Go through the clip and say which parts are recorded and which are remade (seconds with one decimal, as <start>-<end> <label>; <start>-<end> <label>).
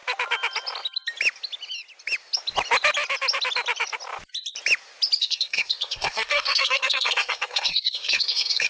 0.0-5.2 recorded; 5.2-8.7 remade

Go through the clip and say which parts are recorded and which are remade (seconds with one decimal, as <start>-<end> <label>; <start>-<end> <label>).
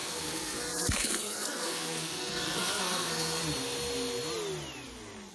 0.0-3.4 remade; 3.4-5.3 recorded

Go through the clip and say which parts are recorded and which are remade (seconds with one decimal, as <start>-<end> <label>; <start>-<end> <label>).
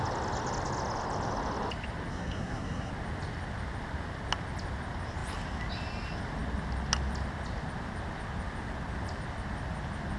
0.0-2.1 recorded; 2.1-2.9 remade; 2.9-10.2 recorded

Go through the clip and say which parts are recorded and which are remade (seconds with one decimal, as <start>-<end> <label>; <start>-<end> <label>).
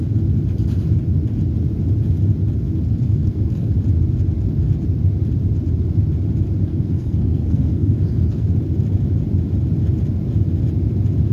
0.0-2.9 recorded; 2.9-3.7 remade; 3.7-6.7 recorded; 6.7-8.5 remade; 8.5-11.3 recorded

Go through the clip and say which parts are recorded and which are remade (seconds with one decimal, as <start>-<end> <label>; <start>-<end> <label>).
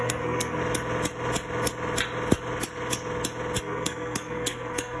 0.0-0.6 remade; 0.6-3.6 recorded; 3.6-5.0 remade